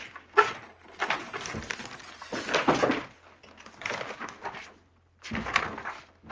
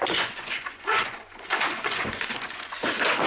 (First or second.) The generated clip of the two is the second